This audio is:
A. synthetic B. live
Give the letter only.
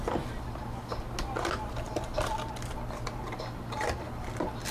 B